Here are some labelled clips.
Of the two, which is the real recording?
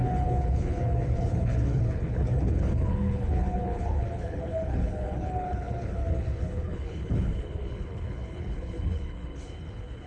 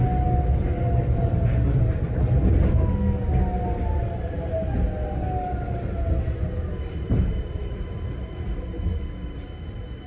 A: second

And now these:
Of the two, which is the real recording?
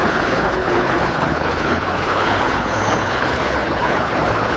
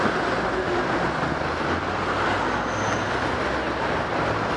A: second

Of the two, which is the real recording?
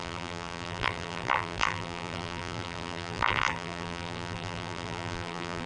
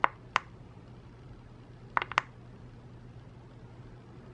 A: second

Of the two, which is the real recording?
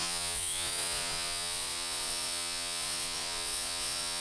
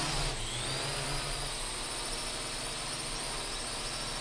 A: second